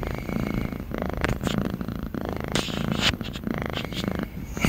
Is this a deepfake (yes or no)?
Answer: yes